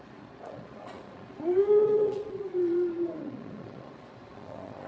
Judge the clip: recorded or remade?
remade